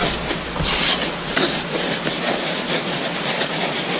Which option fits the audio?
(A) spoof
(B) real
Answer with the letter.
B